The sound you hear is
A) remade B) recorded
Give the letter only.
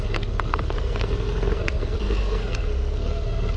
A